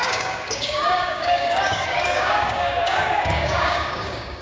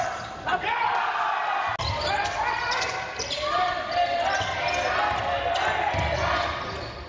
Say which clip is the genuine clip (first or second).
second